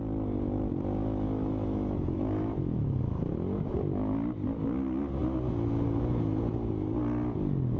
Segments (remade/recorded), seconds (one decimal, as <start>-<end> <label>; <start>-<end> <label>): 0.0-1.0 recorded; 1.0-3.0 remade; 3.0-7.8 recorded